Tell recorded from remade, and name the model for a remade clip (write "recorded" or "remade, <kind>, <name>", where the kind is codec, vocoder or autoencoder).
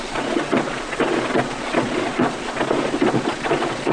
remade, vocoder, Vocos